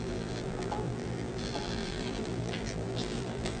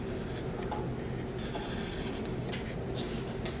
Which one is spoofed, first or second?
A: first